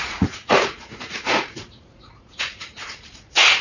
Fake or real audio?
fake